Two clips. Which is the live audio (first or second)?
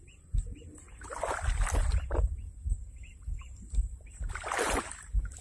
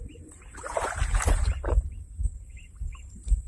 first